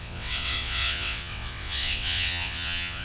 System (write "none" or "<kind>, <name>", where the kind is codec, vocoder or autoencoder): vocoder, WaveNeXt